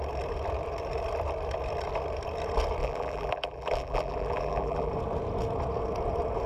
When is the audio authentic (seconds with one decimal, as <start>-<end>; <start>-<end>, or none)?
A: 0.0-2.8; 4.9-6.5